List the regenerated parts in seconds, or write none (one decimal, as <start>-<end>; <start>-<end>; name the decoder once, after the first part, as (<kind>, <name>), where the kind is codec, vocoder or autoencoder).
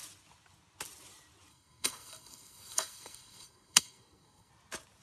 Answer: 1.5-4.5 (codec, SNAC)